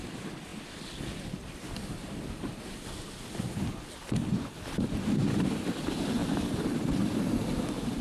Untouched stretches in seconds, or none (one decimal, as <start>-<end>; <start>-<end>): 0.0-8.0